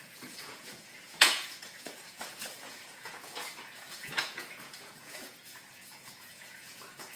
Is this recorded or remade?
remade